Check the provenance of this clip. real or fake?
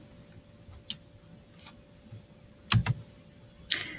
real